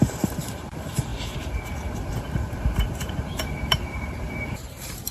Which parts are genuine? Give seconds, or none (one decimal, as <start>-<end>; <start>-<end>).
1.1-2.1